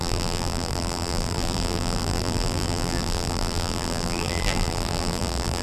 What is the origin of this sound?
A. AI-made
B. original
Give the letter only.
A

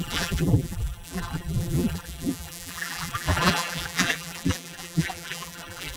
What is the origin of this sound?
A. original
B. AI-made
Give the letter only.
B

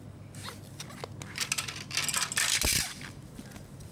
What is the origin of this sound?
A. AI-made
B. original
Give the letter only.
B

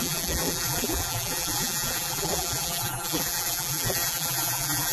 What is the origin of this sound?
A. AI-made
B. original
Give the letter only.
A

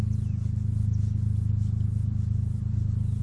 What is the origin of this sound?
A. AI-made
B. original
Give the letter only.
B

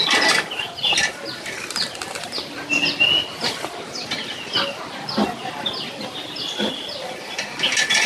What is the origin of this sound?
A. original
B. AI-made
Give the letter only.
A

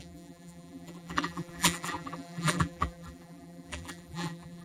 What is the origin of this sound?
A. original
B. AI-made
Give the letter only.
B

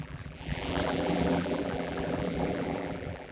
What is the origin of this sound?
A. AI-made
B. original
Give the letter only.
A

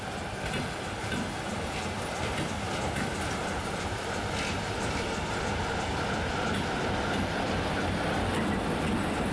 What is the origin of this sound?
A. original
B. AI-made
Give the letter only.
A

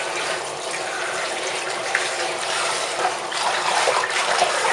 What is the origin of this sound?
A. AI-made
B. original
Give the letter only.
A